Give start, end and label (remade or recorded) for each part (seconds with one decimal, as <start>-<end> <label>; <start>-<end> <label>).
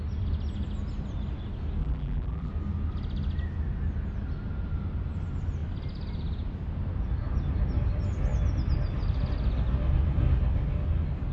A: 0.0-1.8 recorded; 1.8-2.5 remade; 2.5-11.3 recorded